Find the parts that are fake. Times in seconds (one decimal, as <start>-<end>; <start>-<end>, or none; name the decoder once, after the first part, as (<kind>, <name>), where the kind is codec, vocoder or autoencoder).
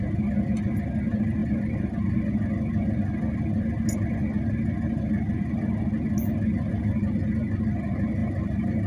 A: 8.2-8.9 (vocoder, BigVGAN v2)